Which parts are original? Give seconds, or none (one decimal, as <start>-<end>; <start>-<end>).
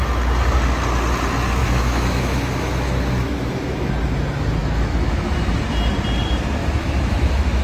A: 0.0-1.6; 3.9-4.6; 5.4-6.6